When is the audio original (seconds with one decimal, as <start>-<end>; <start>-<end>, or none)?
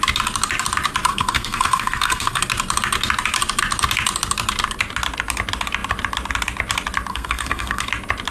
0.0-1.1; 2.4-7.1; 7.9-8.3